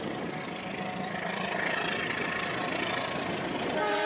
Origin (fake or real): fake